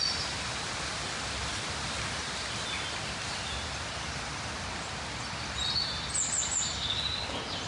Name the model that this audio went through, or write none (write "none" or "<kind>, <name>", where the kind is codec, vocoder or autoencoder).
none